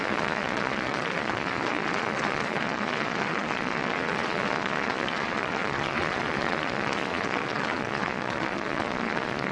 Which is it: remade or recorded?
remade